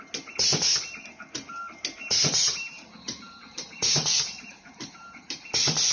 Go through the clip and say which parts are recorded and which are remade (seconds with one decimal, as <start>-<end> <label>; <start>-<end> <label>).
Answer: 0.0-2.0 recorded; 2.0-5.5 remade; 5.5-5.9 recorded